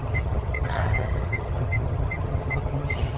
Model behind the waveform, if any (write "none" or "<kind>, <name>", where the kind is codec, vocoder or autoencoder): vocoder, HiFi-GAN